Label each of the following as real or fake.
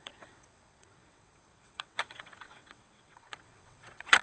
fake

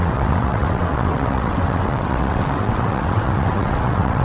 fake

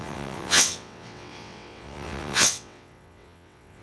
fake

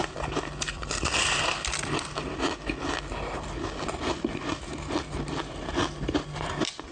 real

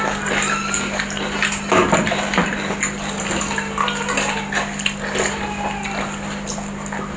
real